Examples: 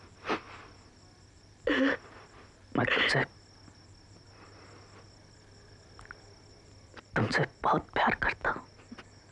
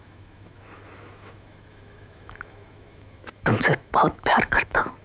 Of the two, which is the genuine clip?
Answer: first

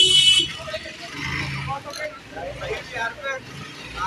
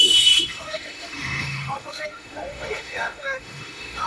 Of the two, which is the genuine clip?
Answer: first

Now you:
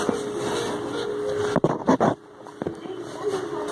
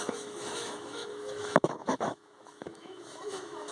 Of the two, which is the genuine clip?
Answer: first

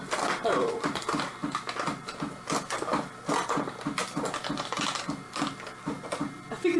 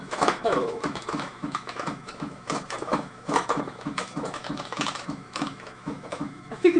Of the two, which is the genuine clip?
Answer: first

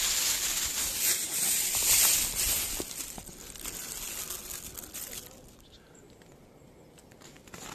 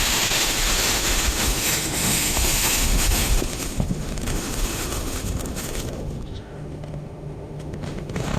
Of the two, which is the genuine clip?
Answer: first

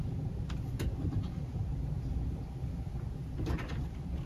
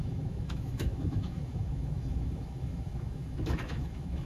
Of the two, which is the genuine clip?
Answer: first